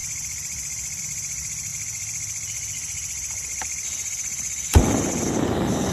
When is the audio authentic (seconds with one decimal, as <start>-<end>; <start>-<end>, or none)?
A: 1.7-5.2